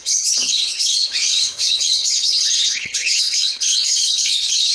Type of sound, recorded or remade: remade